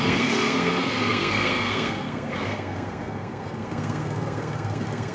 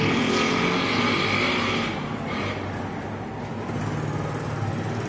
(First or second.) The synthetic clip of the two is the first